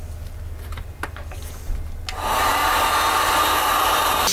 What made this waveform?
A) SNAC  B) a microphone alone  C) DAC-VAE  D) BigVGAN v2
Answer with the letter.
B